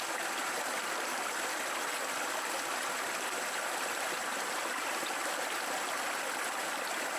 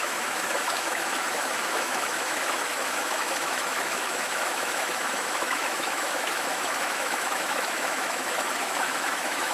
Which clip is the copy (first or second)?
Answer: second